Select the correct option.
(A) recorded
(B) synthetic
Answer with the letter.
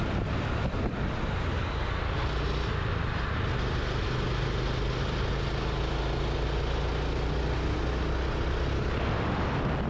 A